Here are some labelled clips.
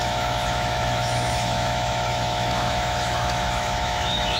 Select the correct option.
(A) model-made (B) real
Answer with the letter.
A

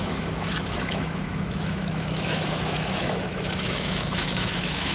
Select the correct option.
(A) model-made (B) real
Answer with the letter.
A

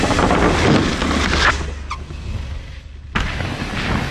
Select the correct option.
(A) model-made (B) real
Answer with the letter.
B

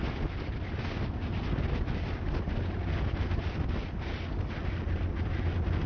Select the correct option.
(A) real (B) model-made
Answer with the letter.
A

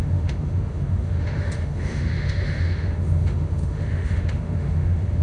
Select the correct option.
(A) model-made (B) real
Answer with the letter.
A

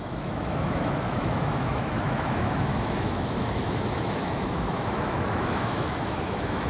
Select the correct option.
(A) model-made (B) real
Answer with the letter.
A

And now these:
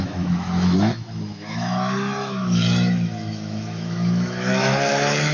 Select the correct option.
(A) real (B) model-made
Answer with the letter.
B